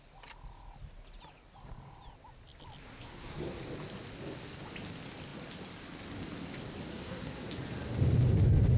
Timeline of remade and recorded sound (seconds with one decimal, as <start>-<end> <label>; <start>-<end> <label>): 0.0-2.8 recorded; 2.8-3.6 remade; 3.6-6.9 recorded; 6.9-7.5 remade; 7.5-8.8 recorded